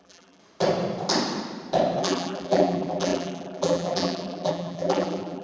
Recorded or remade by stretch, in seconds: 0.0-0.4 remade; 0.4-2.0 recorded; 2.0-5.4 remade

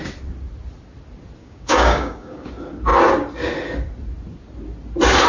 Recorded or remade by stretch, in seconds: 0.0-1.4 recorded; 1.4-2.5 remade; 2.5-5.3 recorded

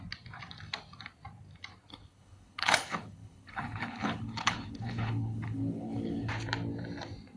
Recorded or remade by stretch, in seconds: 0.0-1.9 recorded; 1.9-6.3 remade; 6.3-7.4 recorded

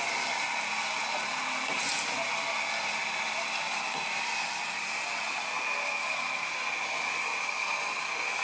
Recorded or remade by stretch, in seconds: 0.0-1.9 recorded; 1.9-5.4 remade; 5.4-8.4 recorded

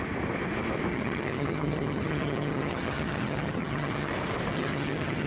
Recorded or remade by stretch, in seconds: 0.0-0.9 recorded; 0.9-4.1 remade; 4.1-4.5 recorded; 4.5-5.3 remade

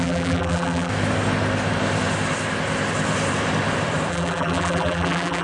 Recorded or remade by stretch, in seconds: 0.0-0.9 remade; 0.9-4.1 recorded; 4.1-5.4 remade

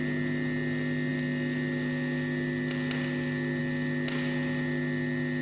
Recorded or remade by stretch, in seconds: 0.0-5.4 recorded